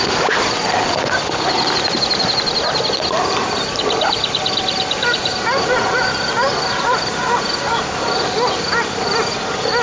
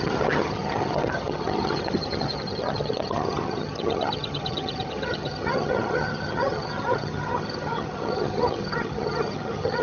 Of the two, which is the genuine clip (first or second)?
first